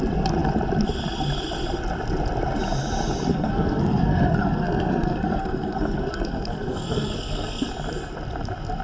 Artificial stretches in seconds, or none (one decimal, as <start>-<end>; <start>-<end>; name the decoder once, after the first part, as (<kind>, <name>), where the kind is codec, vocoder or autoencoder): 3.3-7.7 (codec, SNAC)